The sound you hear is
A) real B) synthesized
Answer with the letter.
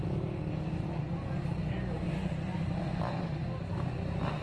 A